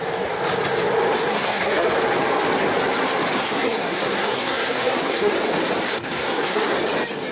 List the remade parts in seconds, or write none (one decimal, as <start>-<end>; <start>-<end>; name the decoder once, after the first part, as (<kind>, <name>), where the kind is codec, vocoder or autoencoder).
1.3-1.9 (codec, SNAC); 3.4-5.3; 5.9-6.8